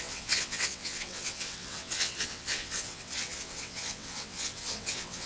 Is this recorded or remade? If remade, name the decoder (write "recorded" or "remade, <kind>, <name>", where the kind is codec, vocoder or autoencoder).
remade, vocoder, WaveNeXt